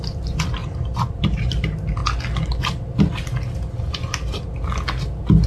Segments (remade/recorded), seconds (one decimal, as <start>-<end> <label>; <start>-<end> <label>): 0.0-2.0 remade; 2.0-5.5 recorded